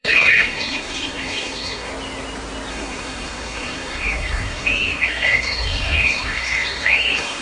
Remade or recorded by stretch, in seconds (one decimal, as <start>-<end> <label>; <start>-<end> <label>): 0.0-1.9 remade; 1.9-2.7 recorded; 2.7-7.4 remade